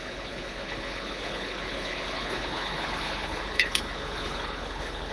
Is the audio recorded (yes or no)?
no